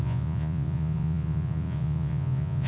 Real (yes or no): no